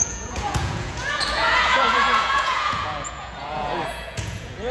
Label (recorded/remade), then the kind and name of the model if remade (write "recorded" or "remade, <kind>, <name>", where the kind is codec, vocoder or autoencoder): remade, vocoder, Vocos